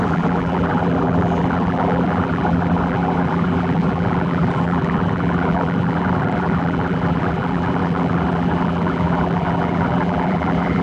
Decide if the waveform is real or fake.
fake